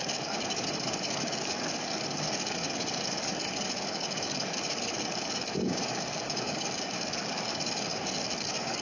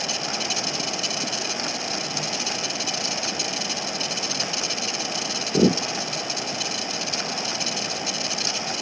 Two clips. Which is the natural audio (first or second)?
second